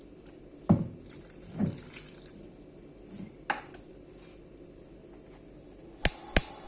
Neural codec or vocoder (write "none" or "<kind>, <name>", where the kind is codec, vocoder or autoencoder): none